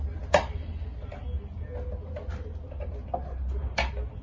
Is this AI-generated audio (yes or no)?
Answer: no